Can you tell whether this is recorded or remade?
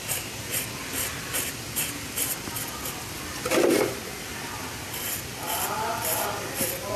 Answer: recorded